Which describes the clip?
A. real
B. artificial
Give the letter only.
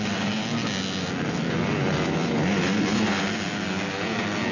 A